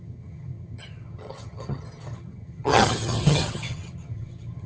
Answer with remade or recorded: remade